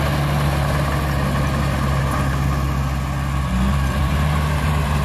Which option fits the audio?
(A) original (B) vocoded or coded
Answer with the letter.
A